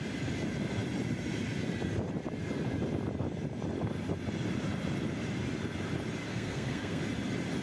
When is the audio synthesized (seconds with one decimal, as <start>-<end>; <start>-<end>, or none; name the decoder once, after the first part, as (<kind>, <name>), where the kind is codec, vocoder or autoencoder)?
6.3-7.0 (codec, SNAC)